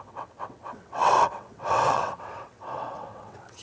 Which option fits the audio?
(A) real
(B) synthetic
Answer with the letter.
B